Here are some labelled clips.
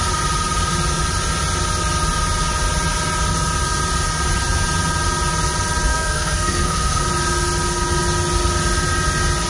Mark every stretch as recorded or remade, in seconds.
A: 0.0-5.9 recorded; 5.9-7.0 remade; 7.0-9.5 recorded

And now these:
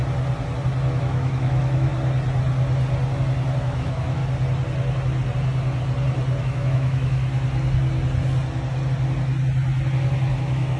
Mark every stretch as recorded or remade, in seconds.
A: 0.0-1.0 recorded; 1.0-1.9 remade; 1.9-3.6 recorded; 3.6-4.2 remade; 4.2-6.4 recorded; 6.4-7.2 remade; 7.2-10.3 recorded; 10.3-10.8 remade

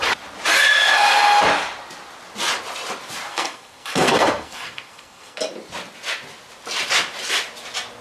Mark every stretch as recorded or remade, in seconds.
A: 0.0-3.3 recorded; 3.3-5.4 remade; 5.4-8.0 recorded

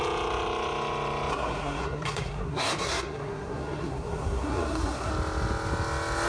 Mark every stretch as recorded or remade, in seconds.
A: 0.0-1.3 recorded; 1.3-5.1 remade; 5.1-6.3 recorded